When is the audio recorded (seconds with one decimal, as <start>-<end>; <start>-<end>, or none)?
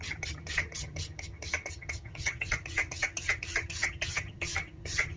none